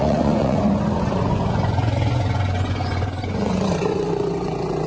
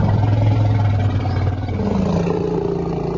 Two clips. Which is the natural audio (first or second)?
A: second